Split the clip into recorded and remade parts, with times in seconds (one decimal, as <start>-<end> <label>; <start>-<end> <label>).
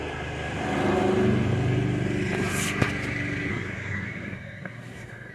0.0-3.5 recorded; 3.5-5.3 remade